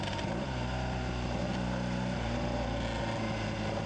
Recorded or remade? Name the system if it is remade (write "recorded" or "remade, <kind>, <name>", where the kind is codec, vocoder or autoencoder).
recorded